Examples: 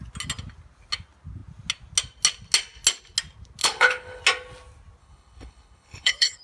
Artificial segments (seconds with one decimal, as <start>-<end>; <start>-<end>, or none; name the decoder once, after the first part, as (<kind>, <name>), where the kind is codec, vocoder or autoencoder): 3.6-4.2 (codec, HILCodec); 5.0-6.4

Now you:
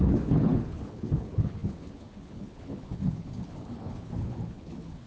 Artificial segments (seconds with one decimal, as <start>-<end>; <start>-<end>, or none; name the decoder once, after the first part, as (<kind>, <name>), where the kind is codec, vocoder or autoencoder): 0.0-5.1 (codec, HILCodec)

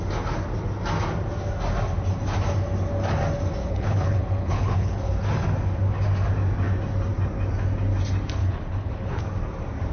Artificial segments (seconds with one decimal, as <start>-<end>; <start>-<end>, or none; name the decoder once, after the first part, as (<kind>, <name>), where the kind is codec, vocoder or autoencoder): 3.6-5.0 (codec, HILCodec); 8.4-9.2

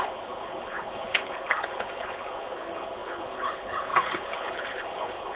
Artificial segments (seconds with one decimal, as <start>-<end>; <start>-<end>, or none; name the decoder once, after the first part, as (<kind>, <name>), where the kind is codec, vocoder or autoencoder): 0.0-5.4 (codec, HILCodec)